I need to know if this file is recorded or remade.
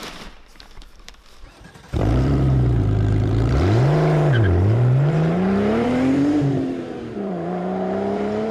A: remade